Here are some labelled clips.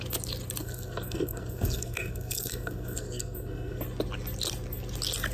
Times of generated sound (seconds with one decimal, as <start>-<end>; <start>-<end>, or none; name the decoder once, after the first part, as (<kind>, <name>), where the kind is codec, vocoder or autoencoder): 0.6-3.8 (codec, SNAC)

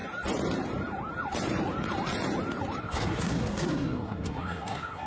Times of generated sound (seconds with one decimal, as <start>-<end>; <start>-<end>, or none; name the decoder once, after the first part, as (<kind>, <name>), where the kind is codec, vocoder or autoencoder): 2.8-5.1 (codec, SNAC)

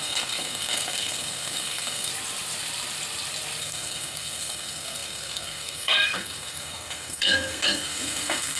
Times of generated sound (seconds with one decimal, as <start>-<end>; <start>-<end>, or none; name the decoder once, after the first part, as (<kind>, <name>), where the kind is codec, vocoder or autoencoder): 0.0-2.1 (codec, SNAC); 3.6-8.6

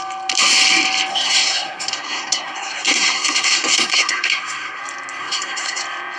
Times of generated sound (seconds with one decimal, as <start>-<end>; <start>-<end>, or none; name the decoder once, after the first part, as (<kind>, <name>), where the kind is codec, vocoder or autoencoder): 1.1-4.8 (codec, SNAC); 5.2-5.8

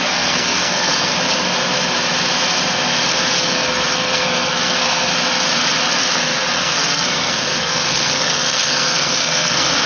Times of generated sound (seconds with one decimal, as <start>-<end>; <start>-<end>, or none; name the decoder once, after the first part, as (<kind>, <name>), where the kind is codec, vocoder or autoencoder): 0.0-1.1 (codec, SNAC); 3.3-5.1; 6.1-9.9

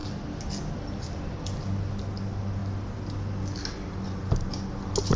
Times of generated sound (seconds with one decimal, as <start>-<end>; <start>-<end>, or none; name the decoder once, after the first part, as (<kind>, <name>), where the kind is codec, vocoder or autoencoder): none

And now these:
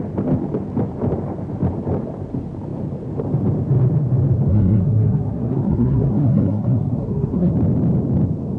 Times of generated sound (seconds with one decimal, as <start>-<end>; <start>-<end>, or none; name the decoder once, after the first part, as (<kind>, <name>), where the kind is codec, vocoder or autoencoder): 4.5-7.5 (codec, SNAC)